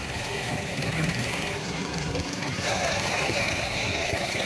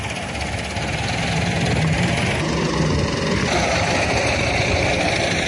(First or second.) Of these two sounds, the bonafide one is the second